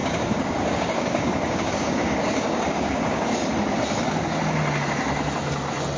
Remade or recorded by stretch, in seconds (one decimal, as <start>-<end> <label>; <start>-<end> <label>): 0.0-3.4 remade; 3.4-6.0 recorded